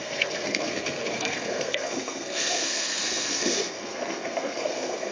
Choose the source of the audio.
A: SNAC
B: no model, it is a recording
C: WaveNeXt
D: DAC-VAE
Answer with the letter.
A